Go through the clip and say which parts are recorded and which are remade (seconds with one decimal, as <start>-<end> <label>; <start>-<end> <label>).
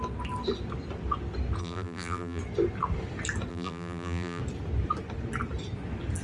0.0-1.6 recorded; 1.6-2.4 remade; 2.4-3.5 recorded; 3.5-4.4 remade; 4.4-6.2 recorded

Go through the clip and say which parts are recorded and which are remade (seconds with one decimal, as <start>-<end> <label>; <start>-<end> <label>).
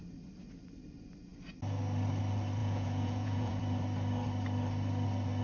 0.0-2.6 recorded; 2.6-3.6 remade; 3.6-5.4 recorded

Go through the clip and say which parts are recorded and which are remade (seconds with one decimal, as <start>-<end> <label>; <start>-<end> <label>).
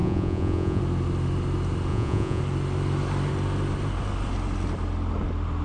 0.0-0.8 remade; 0.8-1.9 recorded; 1.9-2.4 remade; 2.4-5.6 recorded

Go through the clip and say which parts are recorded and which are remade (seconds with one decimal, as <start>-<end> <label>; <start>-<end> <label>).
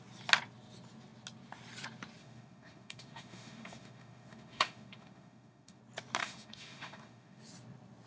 0.0-2.2 recorded; 2.2-5.8 remade; 5.8-6.2 recorded; 6.2-7.4 remade; 7.4-8.1 recorded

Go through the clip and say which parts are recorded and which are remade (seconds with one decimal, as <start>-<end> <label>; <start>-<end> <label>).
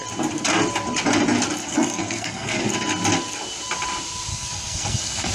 0.0-1.6 recorded; 1.6-2.6 remade; 2.6-4.3 recorded; 4.3-5.3 remade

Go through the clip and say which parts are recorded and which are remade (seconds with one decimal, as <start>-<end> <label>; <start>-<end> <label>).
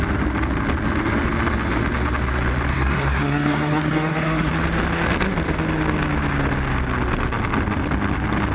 0.0-2.7 recorded; 2.7-4.5 remade; 4.5-8.5 recorded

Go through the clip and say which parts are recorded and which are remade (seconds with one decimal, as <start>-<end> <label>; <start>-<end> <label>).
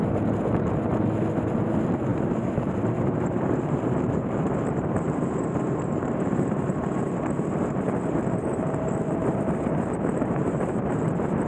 0.0-2.1 recorded; 2.1-7.2 remade; 7.2-8.5 recorded; 8.5-10.9 remade; 10.9-11.5 recorded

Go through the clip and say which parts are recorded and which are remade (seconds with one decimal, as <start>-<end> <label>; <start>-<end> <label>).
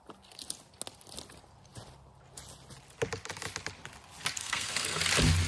0.0-4.4 recorded; 4.4-5.0 remade; 5.0-5.5 recorded